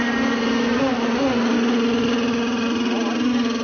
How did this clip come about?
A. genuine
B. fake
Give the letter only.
A